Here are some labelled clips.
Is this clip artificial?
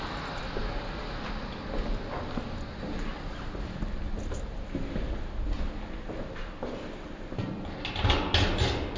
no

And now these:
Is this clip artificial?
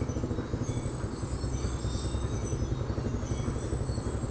no